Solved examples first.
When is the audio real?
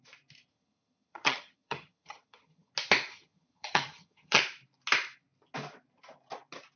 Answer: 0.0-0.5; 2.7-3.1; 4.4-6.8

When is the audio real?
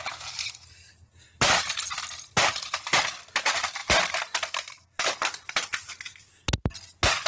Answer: 0.0-7.3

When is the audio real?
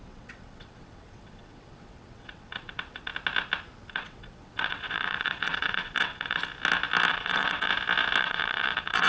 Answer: 3.1-3.9; 6.4-7.1; 7.7-8.2